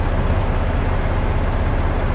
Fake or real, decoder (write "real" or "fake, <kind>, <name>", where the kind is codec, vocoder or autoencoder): real